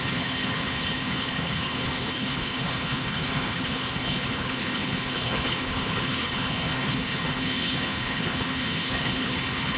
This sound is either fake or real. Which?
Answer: fake